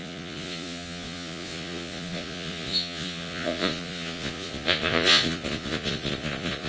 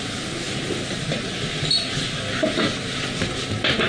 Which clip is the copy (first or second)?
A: first